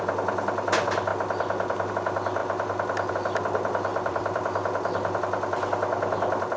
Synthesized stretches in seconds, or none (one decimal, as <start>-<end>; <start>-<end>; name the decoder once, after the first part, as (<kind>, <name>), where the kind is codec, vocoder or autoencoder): 3.9-5.2 (vocoder, BigVGAN v2)